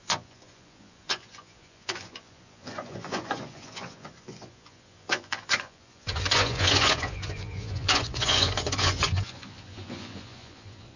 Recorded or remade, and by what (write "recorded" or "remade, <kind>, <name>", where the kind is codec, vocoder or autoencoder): remade, vocoder, Vocos